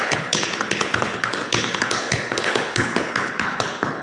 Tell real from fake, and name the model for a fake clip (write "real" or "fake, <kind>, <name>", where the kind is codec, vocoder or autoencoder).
fake, codec, HILCodec